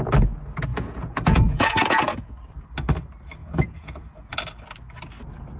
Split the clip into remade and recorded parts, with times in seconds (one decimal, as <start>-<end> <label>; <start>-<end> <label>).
0.0-0.7 recorded; 0.7-2.3 remade; 2.3-3.4 recorded; 3.4-4.3 remade; 4.3-5.6 recorded